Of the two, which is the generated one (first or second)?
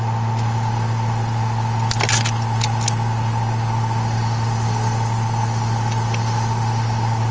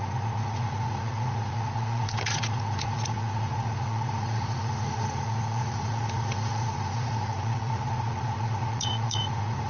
second